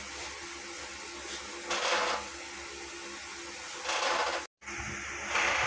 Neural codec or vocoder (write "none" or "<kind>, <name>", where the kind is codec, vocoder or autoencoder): none